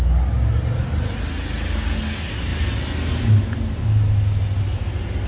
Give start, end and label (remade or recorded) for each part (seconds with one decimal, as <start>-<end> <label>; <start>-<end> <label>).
0.0-5.3 recorded